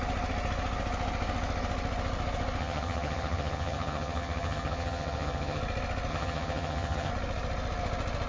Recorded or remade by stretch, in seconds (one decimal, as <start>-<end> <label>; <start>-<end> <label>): 0.0-2.6 recorded; 2.6-5.6 remade; 5.6-6.1 recorded; 6.1-7.1 remade; 7.1-8.3 recorded